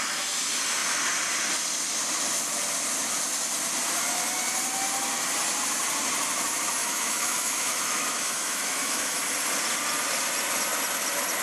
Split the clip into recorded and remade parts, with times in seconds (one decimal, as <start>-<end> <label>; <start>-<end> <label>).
0.0-6.8 recorded; 6.8-9.2 remade; 9.2-11.4 recorded